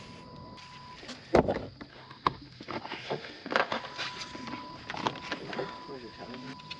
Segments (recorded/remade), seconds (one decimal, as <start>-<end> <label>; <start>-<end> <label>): 0.0-1.9 recorded; 1.9-3.8 remade; 3.8-6.8 recorded